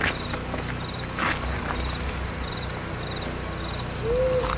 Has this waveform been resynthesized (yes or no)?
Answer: no